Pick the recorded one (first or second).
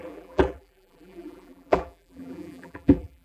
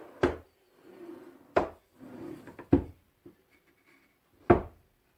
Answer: second